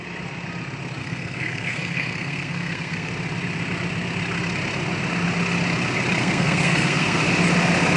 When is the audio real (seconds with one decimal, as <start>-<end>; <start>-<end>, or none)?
0.0-1.0; 3.1-6.2; 7.2-8.0